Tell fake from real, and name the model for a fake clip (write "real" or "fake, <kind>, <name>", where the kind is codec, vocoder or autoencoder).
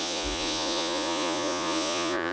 fake, vocoder, Vocos